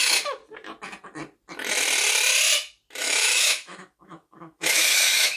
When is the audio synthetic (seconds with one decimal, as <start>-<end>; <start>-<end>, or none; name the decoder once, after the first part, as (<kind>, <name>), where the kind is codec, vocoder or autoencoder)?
0.0-0.4 (autoencoder, DAC-VAE); 3.0-5.4